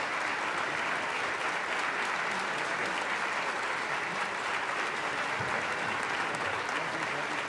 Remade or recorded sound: recorded